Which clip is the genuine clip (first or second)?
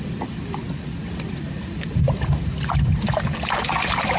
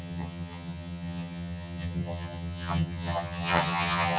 first